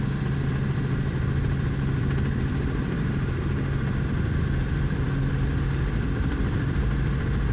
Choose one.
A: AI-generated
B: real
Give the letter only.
A